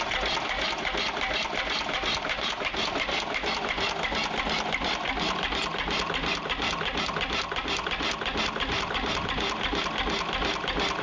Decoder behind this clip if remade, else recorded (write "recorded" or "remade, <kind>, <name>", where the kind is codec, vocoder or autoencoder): recorded